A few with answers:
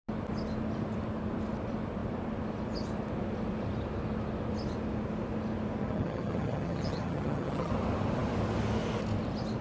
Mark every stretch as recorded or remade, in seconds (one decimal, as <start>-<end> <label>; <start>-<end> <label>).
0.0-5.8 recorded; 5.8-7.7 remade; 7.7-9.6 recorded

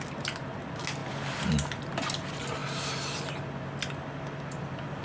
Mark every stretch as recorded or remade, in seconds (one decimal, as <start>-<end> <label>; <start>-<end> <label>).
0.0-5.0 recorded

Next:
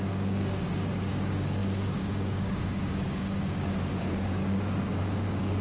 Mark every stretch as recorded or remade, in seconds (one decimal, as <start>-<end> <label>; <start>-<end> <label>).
0.0-5.6 remade

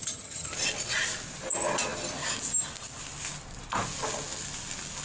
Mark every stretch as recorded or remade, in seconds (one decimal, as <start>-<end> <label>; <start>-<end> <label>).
0.0-0.5 remade; 0.5-5.0 recorded

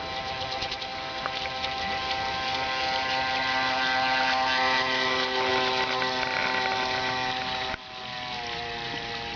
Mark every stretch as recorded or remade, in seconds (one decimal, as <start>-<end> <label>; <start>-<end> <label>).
0.0-9.4 recorded